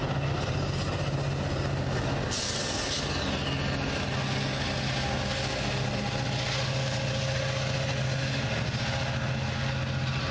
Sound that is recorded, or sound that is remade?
recorded